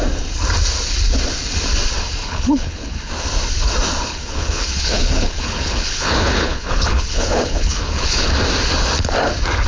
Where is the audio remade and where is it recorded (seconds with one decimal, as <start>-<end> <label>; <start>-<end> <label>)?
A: 0.0-2.2 recorded; 2.2-3.1 remade; 3.1-4.1 recorded; 4.1-8.3 remade; 8.3-9.7 recorded